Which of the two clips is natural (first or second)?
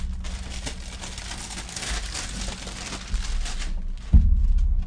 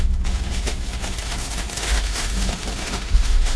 first